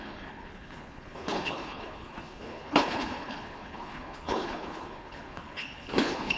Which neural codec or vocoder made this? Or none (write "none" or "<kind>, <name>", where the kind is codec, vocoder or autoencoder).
codec, HILCodec